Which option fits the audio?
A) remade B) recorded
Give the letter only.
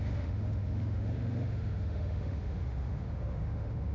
A